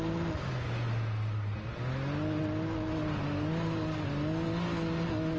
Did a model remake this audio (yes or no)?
no